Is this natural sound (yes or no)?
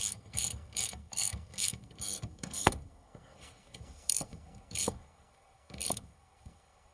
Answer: no